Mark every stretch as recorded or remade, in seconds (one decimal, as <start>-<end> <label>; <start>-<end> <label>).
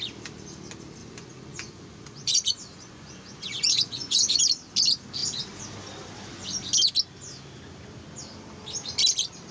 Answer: 0.0-1.0 recorded; 1.0-4.4 remade; 4.4-9.5 recorded